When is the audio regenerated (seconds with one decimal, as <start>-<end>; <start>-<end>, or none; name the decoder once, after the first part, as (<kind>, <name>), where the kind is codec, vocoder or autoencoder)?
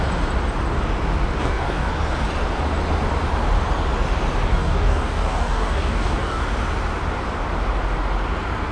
1.4-1.9 (codec, DAC); 4.5-6.4